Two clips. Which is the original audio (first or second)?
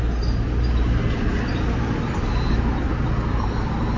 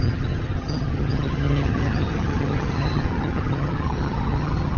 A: first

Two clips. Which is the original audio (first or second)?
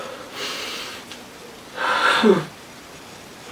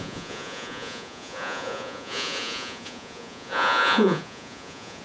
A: first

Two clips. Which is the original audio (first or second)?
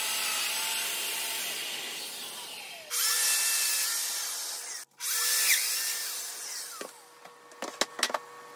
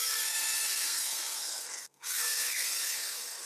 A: first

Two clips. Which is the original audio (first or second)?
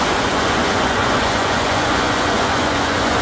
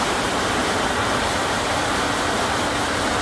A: second